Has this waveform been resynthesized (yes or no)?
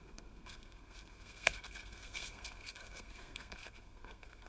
yes